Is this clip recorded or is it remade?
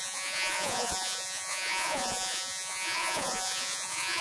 remade